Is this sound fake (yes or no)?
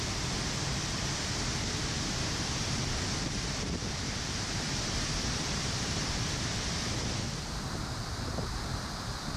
yes